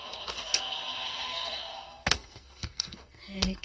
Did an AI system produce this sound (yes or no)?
yes